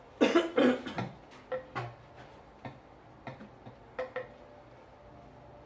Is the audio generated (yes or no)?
no